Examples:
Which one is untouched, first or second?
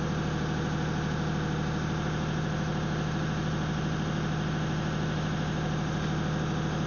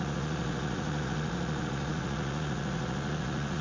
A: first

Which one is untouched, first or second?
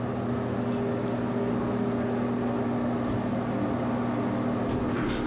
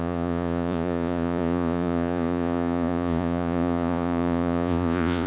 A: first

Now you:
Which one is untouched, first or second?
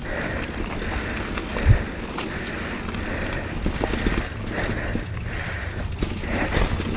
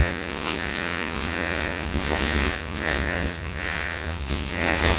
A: first